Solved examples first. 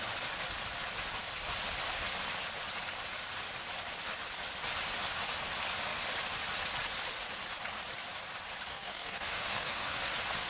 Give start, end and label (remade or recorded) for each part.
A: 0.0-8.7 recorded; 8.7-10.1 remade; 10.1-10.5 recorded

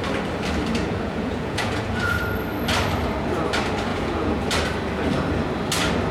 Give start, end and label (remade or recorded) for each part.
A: 0.0-0.8 recorded; 0.8-2.2 remade; 2.2-3.9 recorded; 3.9-4.4 remade; 4.4-6.1 recorded

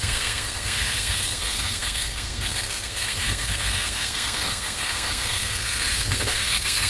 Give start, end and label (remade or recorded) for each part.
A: 0.0-6.9 remade

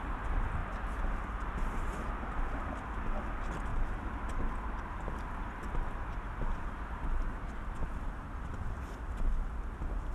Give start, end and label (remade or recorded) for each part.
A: 0.0-7.8 recorded; 7.8-9.2 remade; 9.2-10.1 recorded

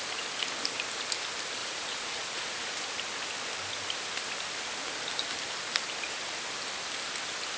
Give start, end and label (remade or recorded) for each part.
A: 0.0-1.6 recorded; 1.6-2.7 remade; 2.7-7.6 recorded

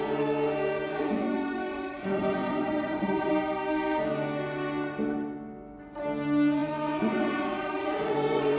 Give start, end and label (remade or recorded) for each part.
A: 0.0-0.9 recorded; 0.9-3.3 remade; 3.3-6.6 recorded; 6.6-8.6 remade